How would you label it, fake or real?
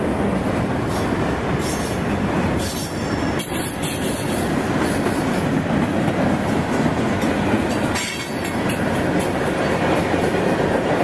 real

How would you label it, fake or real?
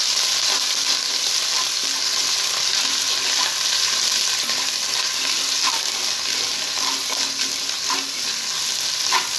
real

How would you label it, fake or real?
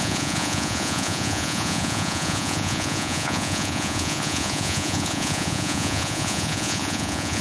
fake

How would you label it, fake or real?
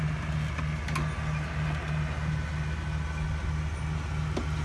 real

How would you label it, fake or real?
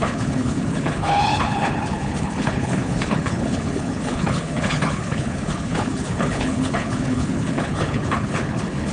fake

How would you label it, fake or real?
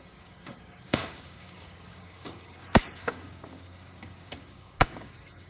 fake